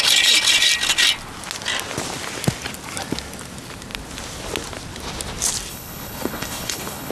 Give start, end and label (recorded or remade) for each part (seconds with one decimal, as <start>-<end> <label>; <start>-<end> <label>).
0.0-5.7 recorded; 5.7-7.1 remade